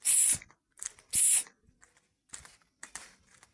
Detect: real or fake real